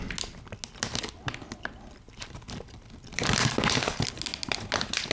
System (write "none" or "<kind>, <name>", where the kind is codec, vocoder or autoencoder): none